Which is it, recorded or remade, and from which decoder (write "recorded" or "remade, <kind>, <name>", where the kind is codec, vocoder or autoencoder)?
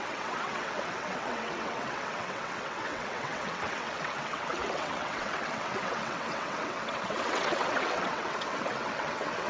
remade, vocoder, WaveNeXt